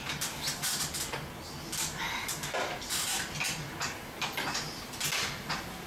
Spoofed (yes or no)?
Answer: no